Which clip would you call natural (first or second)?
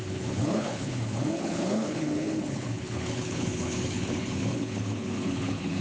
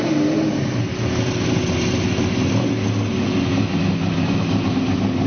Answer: second